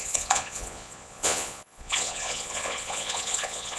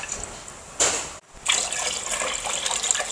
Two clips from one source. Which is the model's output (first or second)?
first